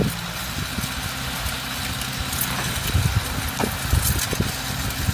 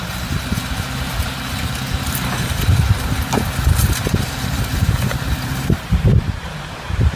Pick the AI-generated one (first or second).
second